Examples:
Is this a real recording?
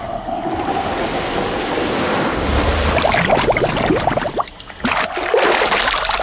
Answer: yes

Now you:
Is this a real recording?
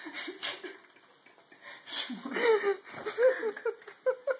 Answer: yes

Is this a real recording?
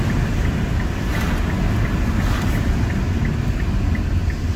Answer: yes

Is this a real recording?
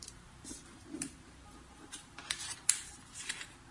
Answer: no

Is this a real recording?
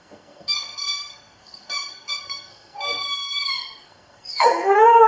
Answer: no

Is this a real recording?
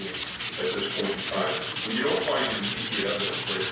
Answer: yes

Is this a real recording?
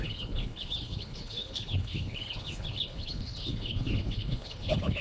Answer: no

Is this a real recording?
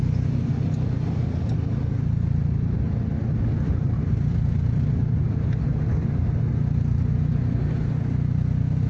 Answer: yes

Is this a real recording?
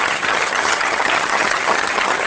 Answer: no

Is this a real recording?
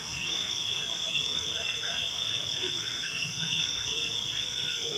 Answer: no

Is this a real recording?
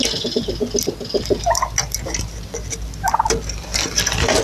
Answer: yes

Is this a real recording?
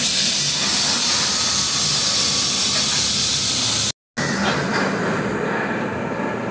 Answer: yes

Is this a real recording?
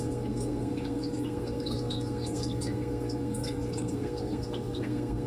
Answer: no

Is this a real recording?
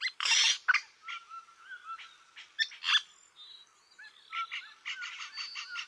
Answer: yes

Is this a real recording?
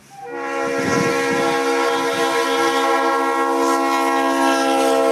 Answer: yes